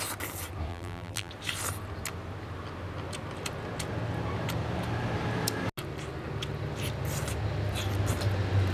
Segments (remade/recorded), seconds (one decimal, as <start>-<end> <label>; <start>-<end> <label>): 0.0-0.7 recorded; 0.7-1.3 remade; 1.3-8.7 recorded